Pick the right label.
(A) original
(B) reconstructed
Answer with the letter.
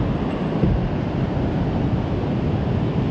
A